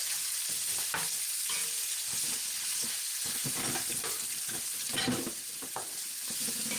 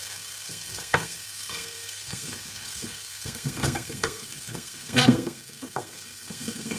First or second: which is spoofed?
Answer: second